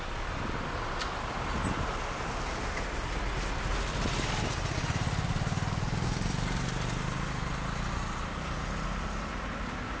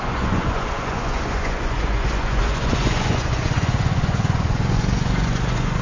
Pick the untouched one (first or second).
first